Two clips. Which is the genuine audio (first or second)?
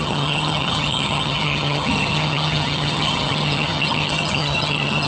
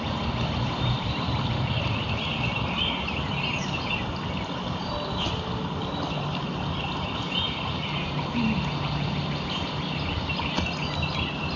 second